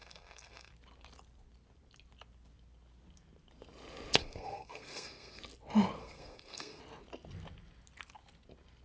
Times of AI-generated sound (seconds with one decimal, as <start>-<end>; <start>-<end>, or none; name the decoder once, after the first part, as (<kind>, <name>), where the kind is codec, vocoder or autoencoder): 0.0-0.7 (codec, SNAC); 4.2-5.4; 6.0-6.8